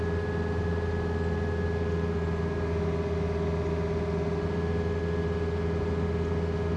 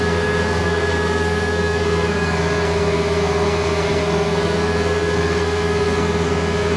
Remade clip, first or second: second